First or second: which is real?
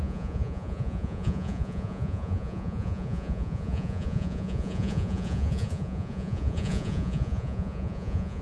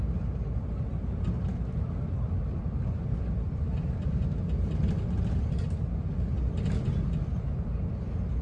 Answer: second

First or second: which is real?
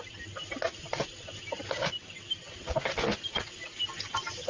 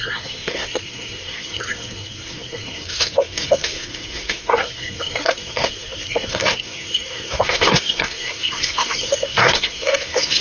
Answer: first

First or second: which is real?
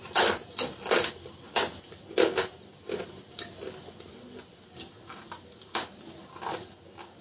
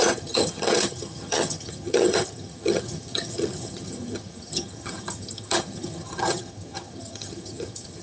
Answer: first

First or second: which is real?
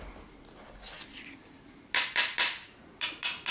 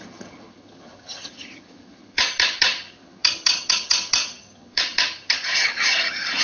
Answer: first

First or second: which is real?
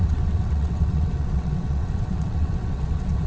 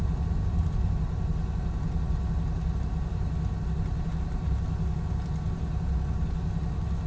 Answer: second